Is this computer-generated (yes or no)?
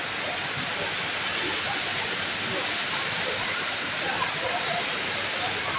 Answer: no